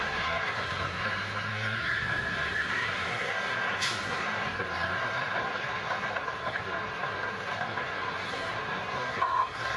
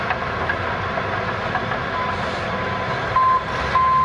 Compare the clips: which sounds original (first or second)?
second